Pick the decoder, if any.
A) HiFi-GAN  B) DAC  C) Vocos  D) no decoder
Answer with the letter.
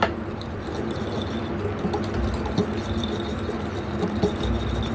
D